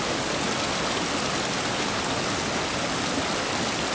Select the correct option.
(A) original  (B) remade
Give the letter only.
A